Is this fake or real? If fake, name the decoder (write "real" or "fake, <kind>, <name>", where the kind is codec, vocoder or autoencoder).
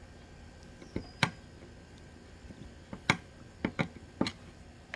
real